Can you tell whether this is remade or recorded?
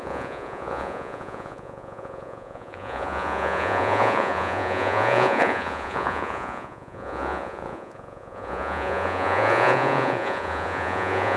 remade